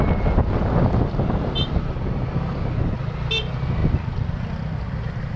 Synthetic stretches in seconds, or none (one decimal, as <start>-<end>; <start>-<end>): none